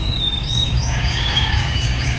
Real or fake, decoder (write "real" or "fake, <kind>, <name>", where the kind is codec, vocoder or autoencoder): fake, codec, DAC